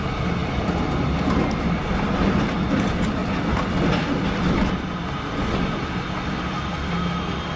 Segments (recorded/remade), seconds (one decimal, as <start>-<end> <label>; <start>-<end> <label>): 0.0-7.6 recorded

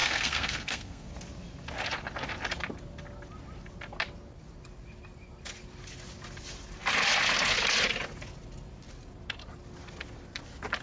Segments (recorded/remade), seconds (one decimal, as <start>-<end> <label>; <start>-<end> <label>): 0.0-1.1 remade; 1.1-10.8 recorded

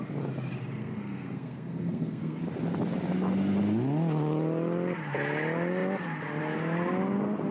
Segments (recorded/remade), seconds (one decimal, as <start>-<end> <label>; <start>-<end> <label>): 0.0-0.8 recorded; 0.8-2.4 remade; 2.4-7.5 recorded

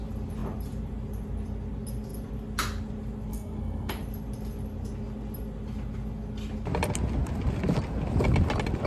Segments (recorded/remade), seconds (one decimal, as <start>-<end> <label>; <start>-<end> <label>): 0.0-3.3 recorded; 3.3-3.9 remade; 3.9-8.9 recorded